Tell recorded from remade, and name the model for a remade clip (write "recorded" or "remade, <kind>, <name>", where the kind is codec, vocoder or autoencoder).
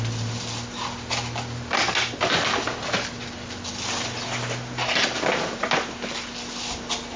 recorded